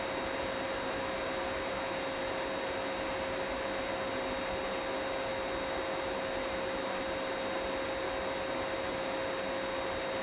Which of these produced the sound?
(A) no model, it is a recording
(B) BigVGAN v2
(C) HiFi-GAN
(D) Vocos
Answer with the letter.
A